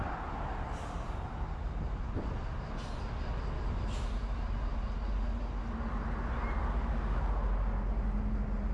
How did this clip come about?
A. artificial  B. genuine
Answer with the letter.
B